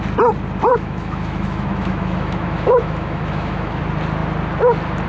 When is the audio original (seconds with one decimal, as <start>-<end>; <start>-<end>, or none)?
0.0-0.7; 3.8-5.1